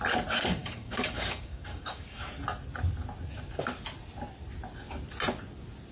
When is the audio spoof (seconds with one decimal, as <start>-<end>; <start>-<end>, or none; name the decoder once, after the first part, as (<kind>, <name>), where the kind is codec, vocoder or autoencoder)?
0.6-2.3 (codec, DAC)